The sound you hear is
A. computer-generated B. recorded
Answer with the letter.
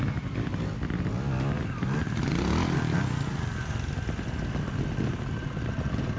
B